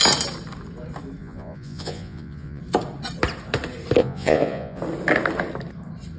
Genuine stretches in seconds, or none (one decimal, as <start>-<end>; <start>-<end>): 0.0-1.2; 2.6-4.0; 4.8-6.2